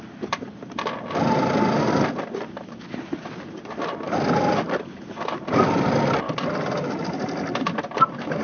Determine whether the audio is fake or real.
real